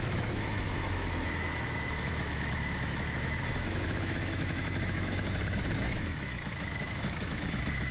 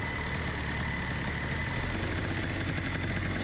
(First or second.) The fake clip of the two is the first